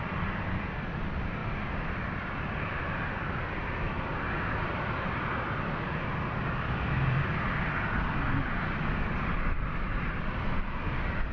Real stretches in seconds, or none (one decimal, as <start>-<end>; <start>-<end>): 0.0-11.3